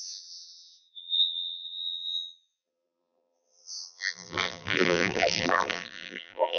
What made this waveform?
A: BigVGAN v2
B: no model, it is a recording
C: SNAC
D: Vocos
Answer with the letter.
A